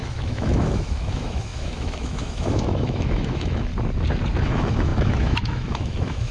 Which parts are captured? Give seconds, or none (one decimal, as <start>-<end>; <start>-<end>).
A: 3.7-4.4